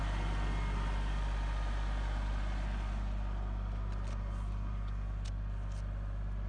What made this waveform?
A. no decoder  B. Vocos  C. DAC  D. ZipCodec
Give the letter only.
A